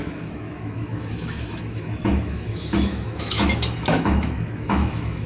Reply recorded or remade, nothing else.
remade